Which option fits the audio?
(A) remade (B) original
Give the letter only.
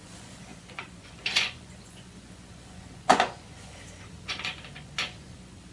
A